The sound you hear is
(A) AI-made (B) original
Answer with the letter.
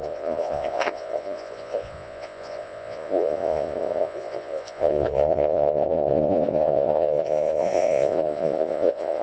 A